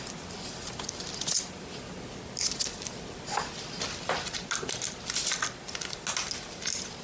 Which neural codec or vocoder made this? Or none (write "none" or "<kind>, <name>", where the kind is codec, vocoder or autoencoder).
none